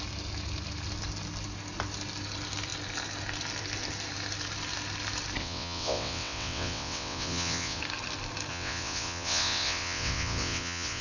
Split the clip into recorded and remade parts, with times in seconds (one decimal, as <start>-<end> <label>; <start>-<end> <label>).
0.0-5.4 recorded; 5.4-7.8 remade; 7.8-8.5 recorded; 8.5-11.0 remade